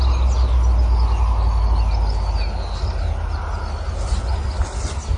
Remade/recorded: recorded